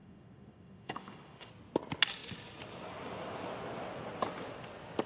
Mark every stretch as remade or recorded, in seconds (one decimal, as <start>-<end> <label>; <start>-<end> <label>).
0.0-1.5 remade; 1.5-5.1 recorded